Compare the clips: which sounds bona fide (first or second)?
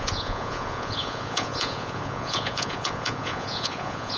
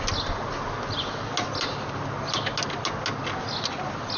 second